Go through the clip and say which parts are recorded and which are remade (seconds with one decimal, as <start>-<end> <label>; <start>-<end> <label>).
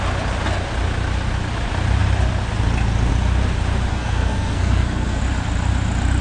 0.0-3.9 recorded; 3.9-5.2 remade; 5.2-6.2 recorded